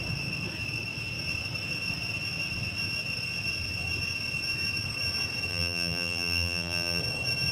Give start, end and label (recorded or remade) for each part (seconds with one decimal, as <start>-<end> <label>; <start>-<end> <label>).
0.0-5.5 recorded; 5.5-7.0 remade; 7.0-7.5 recorded